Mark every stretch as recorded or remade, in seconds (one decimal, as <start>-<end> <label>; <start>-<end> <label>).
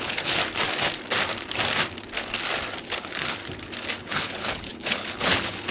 0.0-0.4 remade; 0.4-2.8 recorded; 2.8-3.4 remade; 3.4-4.0 recorded; 4.0-5.7 remade